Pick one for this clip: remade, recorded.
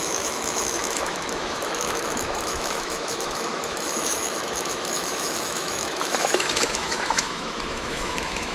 remade